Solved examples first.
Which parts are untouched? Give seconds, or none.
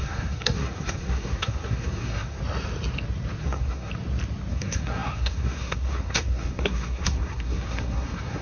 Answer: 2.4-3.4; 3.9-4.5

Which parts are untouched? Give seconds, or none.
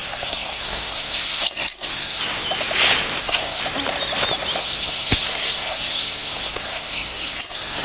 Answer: 2.2-3.2; 3.6-4.6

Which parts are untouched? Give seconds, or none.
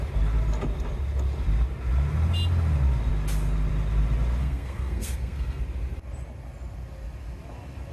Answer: 0.0-4.4; 5.6-7.9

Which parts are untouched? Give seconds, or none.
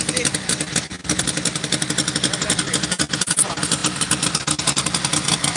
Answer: 0.0-5.6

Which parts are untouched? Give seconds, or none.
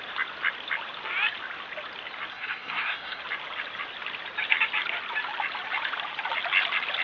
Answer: 0.0-2.3; 3.2-7.0